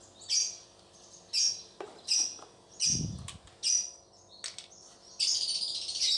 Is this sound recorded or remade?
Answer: recorded